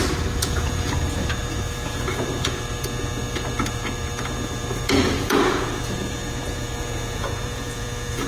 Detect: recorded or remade remade